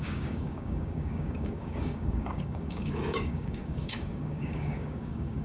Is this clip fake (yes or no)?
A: yes